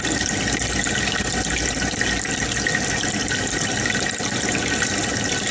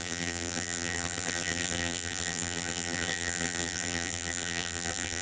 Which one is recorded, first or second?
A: first